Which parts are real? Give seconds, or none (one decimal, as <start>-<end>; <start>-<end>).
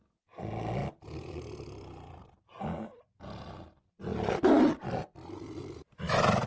0.0-6.5